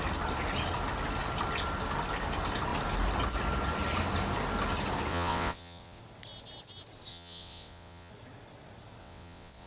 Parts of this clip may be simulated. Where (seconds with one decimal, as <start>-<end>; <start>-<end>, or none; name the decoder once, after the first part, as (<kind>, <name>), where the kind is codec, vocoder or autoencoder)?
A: 5.1-6.0 (vocoder, WaveNeXt); 7.1-8.1; 9.0-9.7